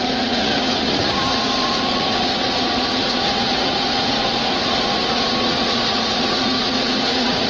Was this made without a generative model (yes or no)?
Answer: no